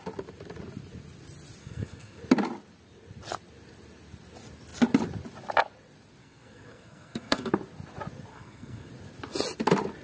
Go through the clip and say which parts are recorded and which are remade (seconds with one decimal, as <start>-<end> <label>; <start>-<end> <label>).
0.0-1.6 recorded; 1.6-2.2 remade; 2.2-6.2 recorded; 6.2-7.5 remade; 7.5-8.3 recorded; 8.3-8.9 remade; 8.9-10.0 recorded